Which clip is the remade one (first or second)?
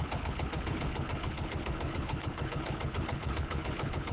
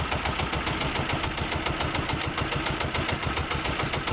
first